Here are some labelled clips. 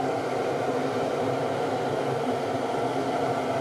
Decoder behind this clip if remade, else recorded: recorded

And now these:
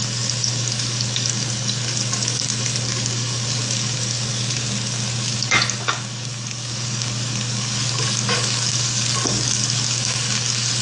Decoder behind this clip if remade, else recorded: remade, codec, DAC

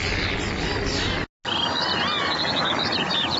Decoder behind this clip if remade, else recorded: recorded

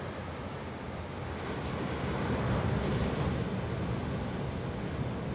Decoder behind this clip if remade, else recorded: recorded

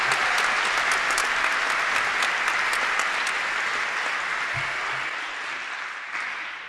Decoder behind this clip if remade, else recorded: recorded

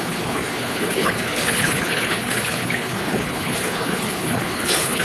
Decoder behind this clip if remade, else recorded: remade, codec, HILCodec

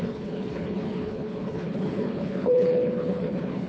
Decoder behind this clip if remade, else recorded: remade, codec, HILCodec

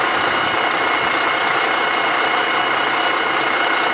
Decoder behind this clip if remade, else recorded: recorded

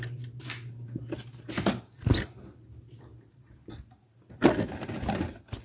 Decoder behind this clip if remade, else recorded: recorded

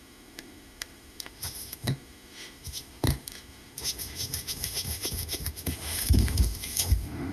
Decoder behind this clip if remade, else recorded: remade, autoencoder, DAC-VAE